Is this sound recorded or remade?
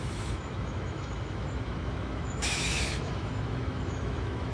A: remade